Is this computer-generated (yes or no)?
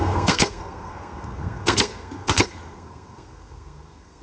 yes